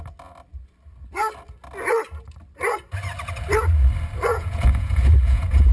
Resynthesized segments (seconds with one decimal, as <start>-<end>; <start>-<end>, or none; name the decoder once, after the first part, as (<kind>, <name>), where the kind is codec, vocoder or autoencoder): 4.3-5.7 (vocoder, Vocos)

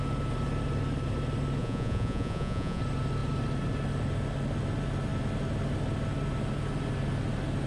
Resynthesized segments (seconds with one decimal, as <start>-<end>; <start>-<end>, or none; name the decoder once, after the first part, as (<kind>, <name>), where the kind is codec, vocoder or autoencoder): 1.6-2.8 (vocoder, Vocos)